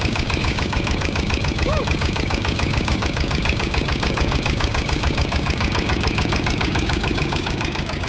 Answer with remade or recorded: remade